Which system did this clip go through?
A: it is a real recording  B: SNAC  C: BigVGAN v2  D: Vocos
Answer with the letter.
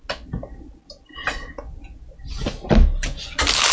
A